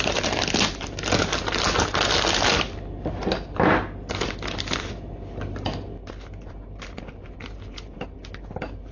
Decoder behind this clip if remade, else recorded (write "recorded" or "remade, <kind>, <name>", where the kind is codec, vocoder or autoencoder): recorded